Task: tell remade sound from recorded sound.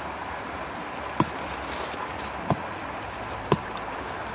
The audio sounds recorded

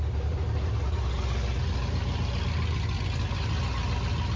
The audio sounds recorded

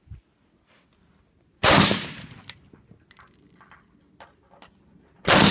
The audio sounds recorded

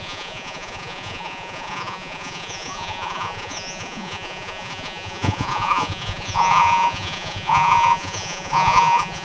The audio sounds remade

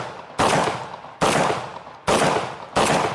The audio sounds recorded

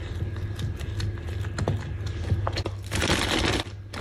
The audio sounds recorded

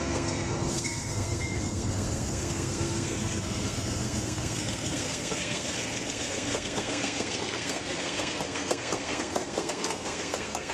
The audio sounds remade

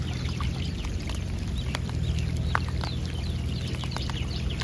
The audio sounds recorded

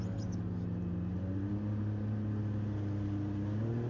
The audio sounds recorded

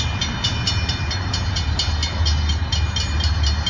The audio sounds recorded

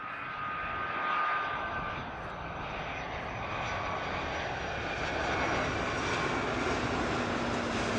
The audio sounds recorded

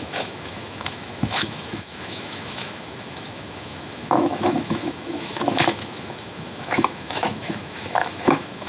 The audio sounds remade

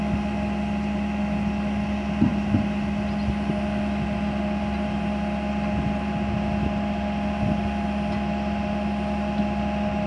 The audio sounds recorded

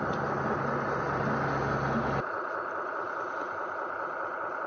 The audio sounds recorded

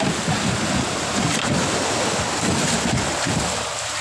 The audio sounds recorded